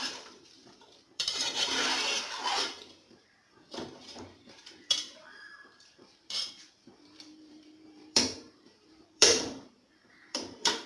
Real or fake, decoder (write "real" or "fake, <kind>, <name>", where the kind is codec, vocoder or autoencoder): fake, vocoder, BigVGAN v2